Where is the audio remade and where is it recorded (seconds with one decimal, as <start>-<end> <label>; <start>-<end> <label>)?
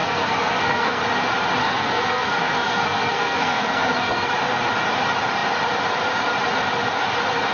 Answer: 0.0-1.0 remade; 1.0-1.6 recorded; 1.6-4.4 remade; 4.4-7.5 recorded